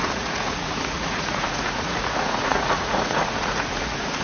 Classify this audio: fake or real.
fake